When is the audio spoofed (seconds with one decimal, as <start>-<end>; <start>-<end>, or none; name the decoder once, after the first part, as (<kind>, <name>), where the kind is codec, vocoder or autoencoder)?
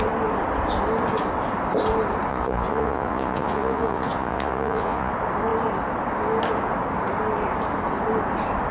2.3-5.1 (vocoder, Vocos)